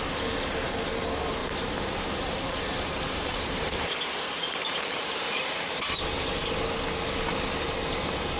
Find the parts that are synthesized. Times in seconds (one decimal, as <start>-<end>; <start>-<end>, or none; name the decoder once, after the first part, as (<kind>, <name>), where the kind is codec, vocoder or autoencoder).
1.4-5.8 (vocoder, BigVGAN v2)